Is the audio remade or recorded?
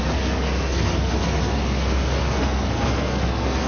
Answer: remade